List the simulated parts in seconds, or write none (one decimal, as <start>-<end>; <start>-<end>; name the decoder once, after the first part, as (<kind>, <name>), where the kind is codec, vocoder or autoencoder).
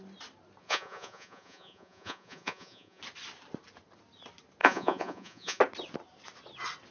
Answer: 0.6-3.0 (vocoder, Vocos); 4.6-5.6